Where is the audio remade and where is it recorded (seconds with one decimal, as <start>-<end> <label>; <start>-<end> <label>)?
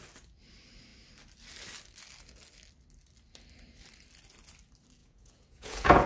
0.0-5.0 recorded; 5.0-6.1 remade